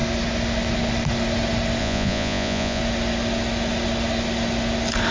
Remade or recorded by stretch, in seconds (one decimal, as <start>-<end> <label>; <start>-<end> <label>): 0.0-1.8 recorded; 1.8-2.8 remade; 2.8-5.1 recorded